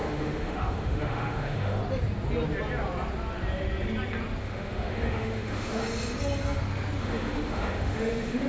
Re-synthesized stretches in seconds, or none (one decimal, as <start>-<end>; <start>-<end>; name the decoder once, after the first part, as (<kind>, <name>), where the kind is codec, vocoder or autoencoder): 0.0-1.8 (autoencoder, DAC-VAE); 4.4-5.8; 7.0-8.5